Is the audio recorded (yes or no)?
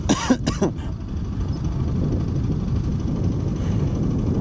yes